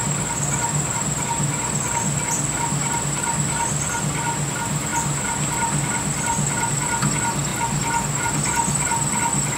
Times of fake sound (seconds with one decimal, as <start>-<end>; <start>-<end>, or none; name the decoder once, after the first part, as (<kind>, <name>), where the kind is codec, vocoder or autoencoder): none